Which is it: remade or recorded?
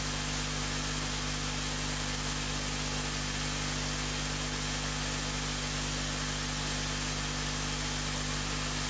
recorded